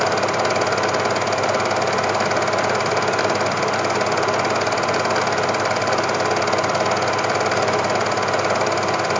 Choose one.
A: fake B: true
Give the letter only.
B